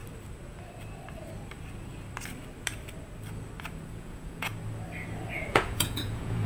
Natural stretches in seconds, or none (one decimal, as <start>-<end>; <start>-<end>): 0.0-3.9; 4.5-5.5